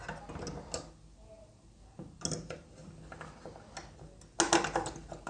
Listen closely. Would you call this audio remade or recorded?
recorded